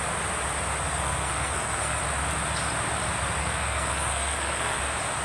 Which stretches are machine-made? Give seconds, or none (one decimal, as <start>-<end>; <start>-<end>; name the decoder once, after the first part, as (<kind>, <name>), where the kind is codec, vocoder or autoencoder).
0.9-2.0 (codec, SNAC); 3.4-4.8